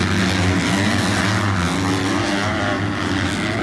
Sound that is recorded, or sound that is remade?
recorded